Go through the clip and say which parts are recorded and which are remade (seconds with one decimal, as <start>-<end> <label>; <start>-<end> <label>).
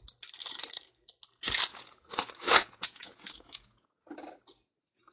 0.0-1.7 recorded; 1.7-4.0 remade; 4.0-5.1 recorded